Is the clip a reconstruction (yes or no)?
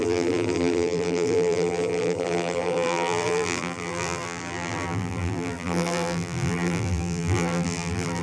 yes